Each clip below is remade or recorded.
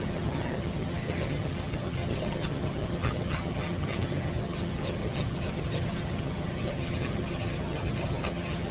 remade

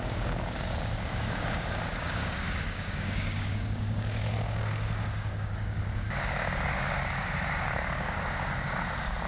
remade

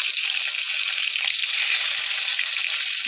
recorded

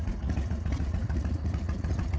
remade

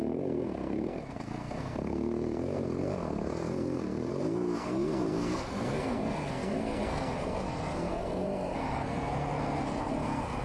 remade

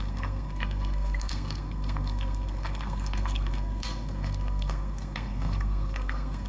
remade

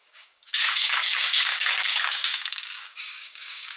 remade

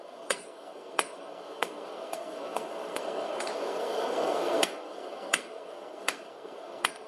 remade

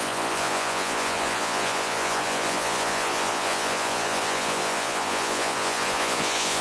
remade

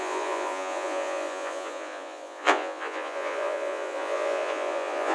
remade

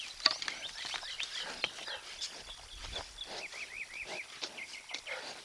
recorded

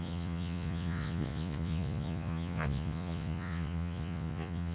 remade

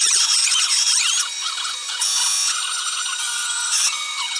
remade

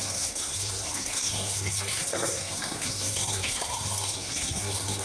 remade